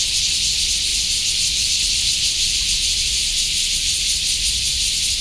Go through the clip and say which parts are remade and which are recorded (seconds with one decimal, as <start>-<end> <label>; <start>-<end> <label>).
0.0-0.9 recorded; 0.9-4.0 remade; 4.0-4.7 recorded; 4.7-5.2 remade